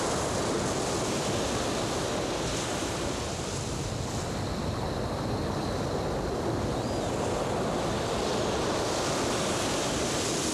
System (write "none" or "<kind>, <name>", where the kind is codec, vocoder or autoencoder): none